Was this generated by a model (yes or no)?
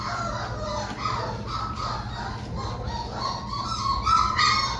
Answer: no